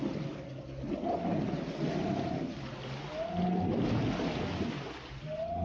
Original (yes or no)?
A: yes